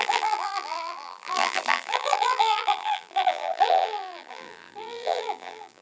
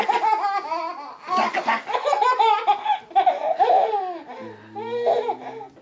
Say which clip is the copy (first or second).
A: first